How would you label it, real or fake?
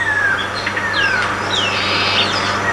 real